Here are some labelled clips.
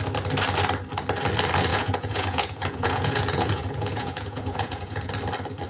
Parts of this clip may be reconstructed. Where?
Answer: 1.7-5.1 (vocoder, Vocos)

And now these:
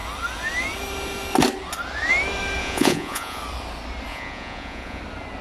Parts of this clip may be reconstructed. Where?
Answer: 2.6-3.4 (vocoder, Vocos); 4.1-5.0

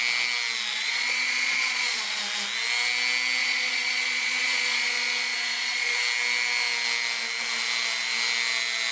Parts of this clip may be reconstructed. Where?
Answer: 0.7-2.2 (vocoder, Vocos); 3.4-6.0

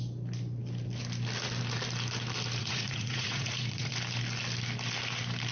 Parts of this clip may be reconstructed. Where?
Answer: 2.6-3.9 (vocoder, Vocos)

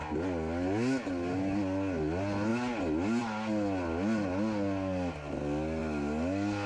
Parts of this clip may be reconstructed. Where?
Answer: none